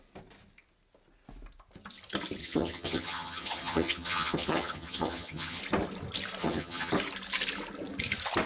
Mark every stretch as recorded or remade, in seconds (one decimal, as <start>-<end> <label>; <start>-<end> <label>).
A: 0.0-2.4 recorded; 2.4-5.6 remade; 5.6-6.4 recorded; 6.4-6.9 remade; 6.9-8.5 recorded